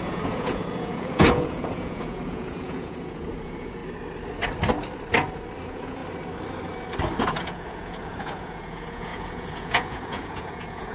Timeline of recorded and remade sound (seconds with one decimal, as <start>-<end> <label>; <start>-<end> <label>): 0.0-3.8 remade; 3.8-5.6 recorded; 5.6-6.0 remade; 6.0-7.2 recorded; 7.2-10.9 remade